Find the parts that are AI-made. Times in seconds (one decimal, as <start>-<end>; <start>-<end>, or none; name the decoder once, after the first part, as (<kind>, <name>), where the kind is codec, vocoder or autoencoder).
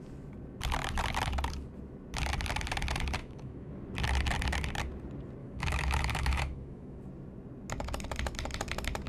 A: 3.2-3.7 (autoencoder, DAC-VAE); 5.4-7.0